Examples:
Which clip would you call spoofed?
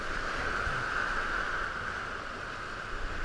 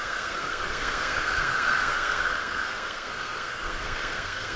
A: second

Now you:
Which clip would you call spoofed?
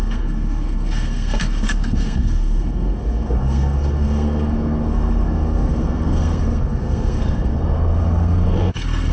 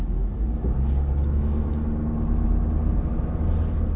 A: first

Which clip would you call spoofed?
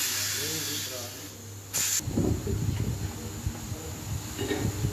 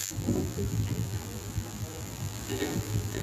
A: second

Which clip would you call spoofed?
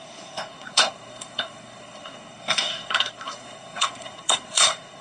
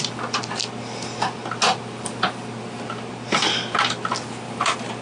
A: first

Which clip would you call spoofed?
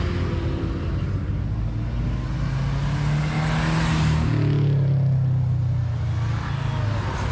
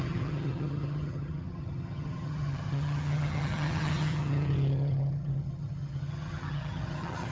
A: second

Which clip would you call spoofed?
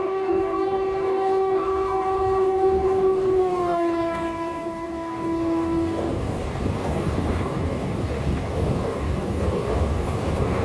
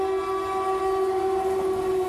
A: first